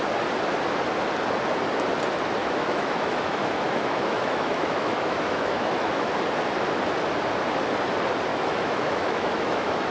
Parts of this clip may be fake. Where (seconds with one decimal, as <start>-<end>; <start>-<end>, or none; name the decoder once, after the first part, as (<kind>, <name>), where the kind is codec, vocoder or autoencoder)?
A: 2.4-6.1 (autoencoder, DAC-VAE); 8.3-9.9